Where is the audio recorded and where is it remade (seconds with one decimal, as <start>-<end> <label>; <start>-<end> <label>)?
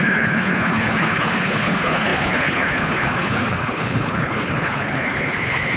0.0-5.8 remade